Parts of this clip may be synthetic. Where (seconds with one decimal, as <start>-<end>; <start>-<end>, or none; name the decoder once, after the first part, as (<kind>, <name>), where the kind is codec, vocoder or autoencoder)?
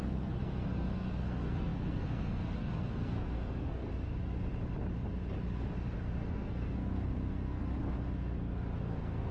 0.0-3.9 (codec, SNAC); 6.0-7.6; 8.8-9.3